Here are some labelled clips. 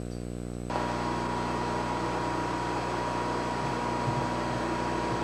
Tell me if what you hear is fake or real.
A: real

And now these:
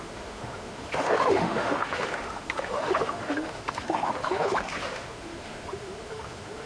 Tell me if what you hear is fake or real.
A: fake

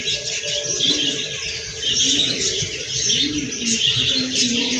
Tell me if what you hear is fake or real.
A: real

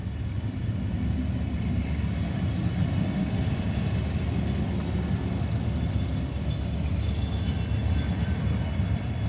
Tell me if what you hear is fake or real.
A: real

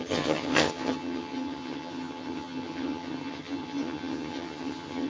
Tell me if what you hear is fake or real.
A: fake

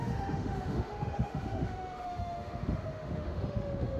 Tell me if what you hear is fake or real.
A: fake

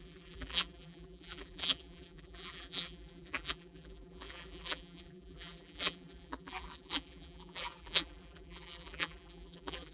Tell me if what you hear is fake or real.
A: fake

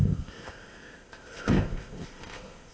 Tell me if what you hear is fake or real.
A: fake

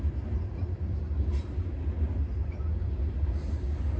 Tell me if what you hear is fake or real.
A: real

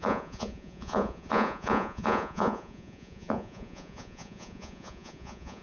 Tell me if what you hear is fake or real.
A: fake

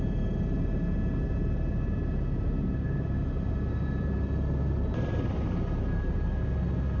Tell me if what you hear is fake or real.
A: real